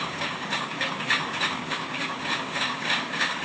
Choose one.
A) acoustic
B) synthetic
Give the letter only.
B